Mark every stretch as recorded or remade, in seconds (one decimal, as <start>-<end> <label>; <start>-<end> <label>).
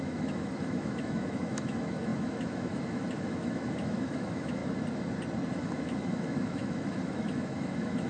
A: 0.0-4.6 remade; 4.6-5.5 recorded; 5.5-8.1 remade